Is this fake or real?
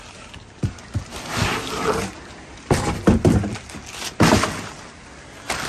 real